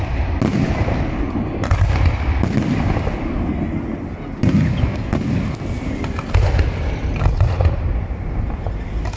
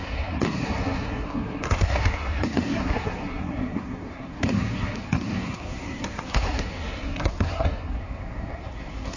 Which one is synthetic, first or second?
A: second